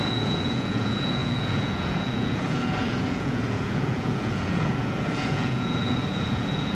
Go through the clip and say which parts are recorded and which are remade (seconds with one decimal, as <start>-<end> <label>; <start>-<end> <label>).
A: 0.0-6.7 remade